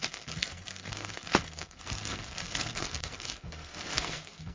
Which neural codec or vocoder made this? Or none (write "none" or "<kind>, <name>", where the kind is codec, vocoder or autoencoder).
codec, SNAC